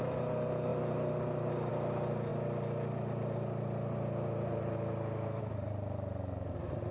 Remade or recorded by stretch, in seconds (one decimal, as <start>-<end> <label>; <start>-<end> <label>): 0.0-6.9 recorded